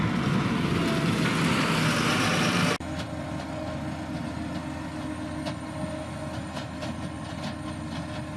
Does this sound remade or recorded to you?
recorded